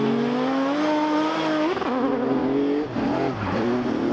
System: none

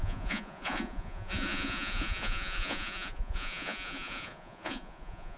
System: vocoder, Vocos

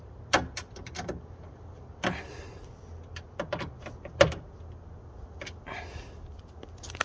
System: none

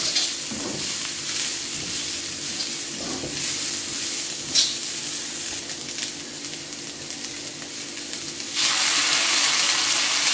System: none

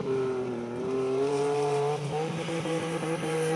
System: vocoder, BigVGAN v2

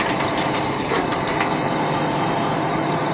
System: vocoder, BigVGAN v2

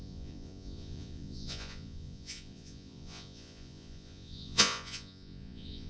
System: vocoder, Vocos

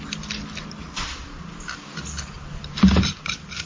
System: none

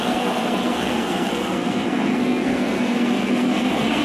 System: codec, SNAC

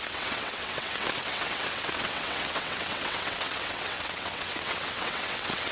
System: vocoder, WaveNeXt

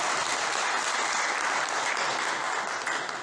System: none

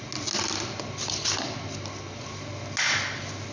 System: none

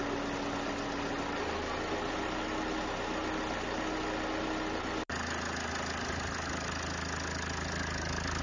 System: none